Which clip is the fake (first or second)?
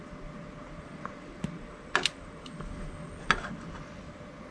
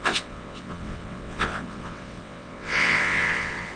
second